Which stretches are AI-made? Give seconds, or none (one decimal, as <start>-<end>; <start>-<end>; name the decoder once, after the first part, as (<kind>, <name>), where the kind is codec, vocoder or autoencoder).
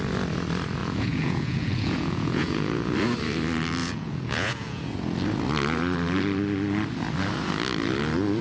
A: 0.8-2.9 (vocoder, Vocos); 3.8-4.8